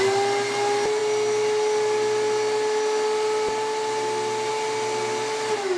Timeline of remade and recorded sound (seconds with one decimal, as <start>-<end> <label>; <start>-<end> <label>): 0.0-5.8 recorded